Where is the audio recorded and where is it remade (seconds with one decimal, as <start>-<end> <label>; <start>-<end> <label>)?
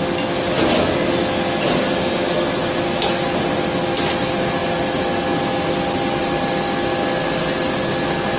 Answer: 0.0-8.4 recorded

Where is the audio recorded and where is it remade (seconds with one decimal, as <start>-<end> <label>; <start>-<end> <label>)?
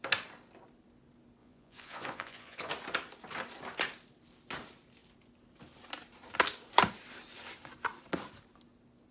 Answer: 0.0-1.4 recorded; 1.4-2.7 remade; 2.7-9.1 recorded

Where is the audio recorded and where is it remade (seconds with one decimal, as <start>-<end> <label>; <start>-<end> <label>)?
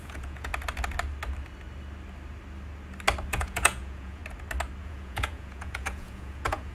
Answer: 0.0-0.5 remade; 0.5-3.3 recorded; 3.3-4.2 remade; 4.2-4.8 recorded; 4.8-6.7 remade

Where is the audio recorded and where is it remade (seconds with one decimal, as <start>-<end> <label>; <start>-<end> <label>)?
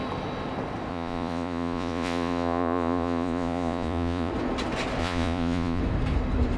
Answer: 0.0-0.9 recorded; 0.9-4.3 remade; 4.3-5.0 recorded; 5.0-5.8 remade; 5.8-6.6 recorded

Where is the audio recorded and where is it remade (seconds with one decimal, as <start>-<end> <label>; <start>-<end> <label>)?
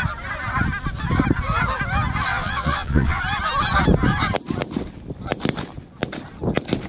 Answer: 0.0-2.3 recorded; 2.3-3.2 remade; 3.2-6.9 recorded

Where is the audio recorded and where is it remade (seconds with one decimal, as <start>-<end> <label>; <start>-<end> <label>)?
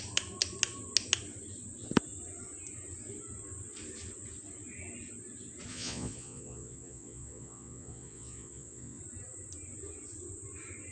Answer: 0.0-5.7 recorded; 5.7-9.0 remade; 9.0-10.9 recorded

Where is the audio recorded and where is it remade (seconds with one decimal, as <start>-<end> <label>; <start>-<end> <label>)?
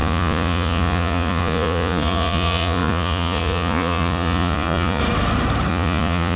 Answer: 0.0-5.0 remade; 5.0-5.7 recorded; 5.7-6.4 remade